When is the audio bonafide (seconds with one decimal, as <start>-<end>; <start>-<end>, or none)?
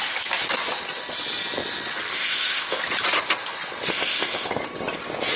0.0-2.1; 2.8-3.9; 4.6-5.4